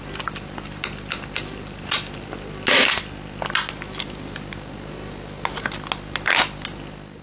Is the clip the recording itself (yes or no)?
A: yes